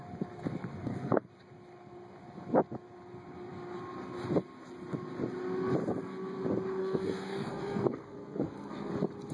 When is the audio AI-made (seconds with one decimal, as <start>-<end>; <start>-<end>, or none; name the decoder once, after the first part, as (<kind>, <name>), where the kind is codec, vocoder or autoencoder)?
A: 0.7-1.3 (codec, SNAC); 6.8-8.9